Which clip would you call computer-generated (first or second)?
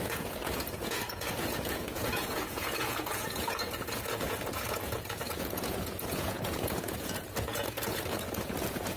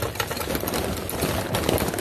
first